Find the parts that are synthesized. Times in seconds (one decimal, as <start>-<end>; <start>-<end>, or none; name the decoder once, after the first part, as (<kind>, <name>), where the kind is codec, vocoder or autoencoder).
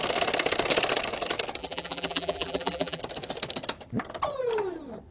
1.6-3.0 (vocoder, BigVGAN v2)